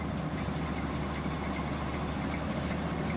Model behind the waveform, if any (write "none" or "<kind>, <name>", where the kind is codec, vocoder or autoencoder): none